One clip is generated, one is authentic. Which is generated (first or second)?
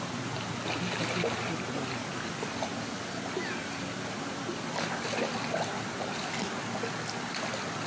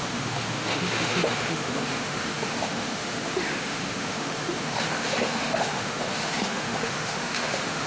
second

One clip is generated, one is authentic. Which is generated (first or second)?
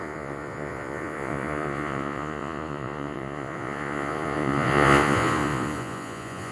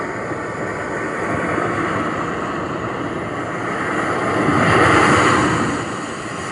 first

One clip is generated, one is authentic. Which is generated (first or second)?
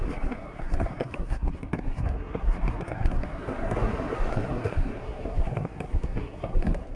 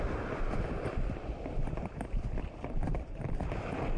first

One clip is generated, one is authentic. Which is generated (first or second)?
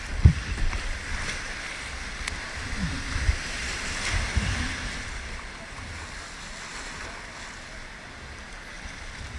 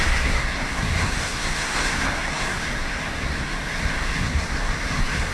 second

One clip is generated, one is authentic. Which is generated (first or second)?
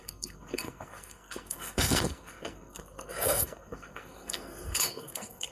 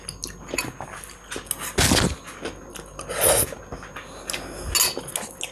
first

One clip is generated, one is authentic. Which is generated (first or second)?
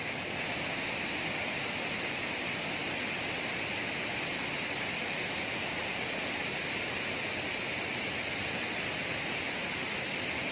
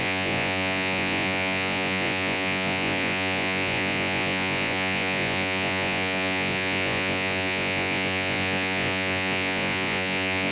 second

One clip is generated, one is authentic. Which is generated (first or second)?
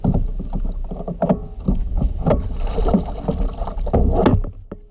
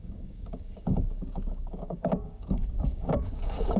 second